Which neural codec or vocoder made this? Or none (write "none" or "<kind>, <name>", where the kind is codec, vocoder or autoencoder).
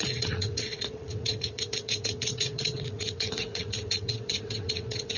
vocoder, WaveNeXt